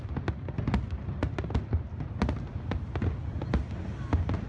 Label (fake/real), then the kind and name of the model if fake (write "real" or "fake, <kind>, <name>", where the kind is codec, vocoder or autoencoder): real